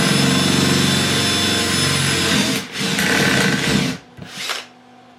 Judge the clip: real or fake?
real